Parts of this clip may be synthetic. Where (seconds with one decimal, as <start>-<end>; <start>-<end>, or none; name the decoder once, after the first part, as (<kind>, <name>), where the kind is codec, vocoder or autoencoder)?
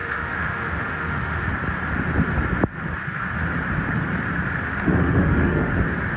0.0-1.5 (autoencoder, DAC-VAE); 5.0-5.7